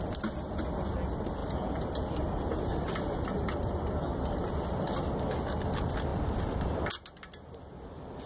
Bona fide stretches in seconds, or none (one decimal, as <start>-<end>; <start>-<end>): 0.0-8.3